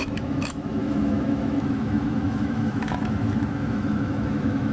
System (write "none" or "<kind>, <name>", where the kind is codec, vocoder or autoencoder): autoencoder, DAC-VAE